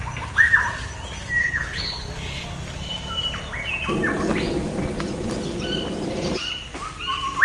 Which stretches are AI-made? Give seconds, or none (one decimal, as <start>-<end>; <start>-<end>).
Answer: 1.4-2.1